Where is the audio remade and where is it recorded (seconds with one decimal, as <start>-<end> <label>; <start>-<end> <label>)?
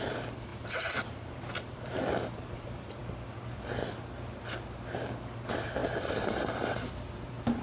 0.0-0.5 recorded; 0.5-3.0 remade; 3.0-5.8 recorded; 5.8-7.6 remade